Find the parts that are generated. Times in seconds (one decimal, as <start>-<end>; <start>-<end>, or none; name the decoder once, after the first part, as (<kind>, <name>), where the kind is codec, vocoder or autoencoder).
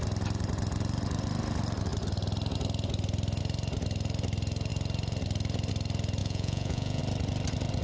6.2-7.0 (vocoder, Vocos)